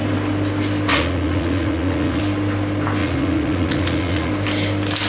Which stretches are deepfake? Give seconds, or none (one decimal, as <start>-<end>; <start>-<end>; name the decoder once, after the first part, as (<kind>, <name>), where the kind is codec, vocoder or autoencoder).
0.9-2.2 (vocoder, Vocos); 3.0-4.3